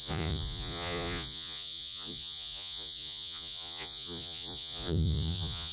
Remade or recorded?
remade